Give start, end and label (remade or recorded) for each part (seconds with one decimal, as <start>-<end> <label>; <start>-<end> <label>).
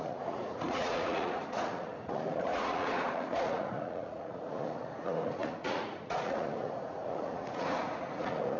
0.0-8.6 remade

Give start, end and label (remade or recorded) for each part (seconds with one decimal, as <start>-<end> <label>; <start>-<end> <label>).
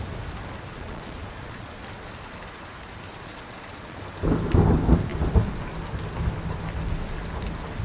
0.0-0.7 recorded; 0.7-1.7 remade; 1.7-3.1 recorded; 3.1-4.0 remade; 4.0-7.8 recorded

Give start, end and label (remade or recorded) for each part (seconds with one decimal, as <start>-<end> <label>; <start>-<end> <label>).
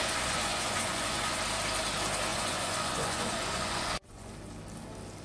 0.0-1.4 remade; 1.4-2.3 recorded; 2.3-4.3 remade; 4.3-5.2 recorded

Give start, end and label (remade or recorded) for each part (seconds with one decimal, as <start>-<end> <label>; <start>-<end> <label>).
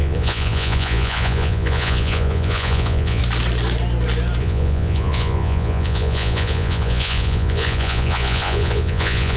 0.0-3.2 remade; 3.2-4.4 recorded; 4.4-9.4 remade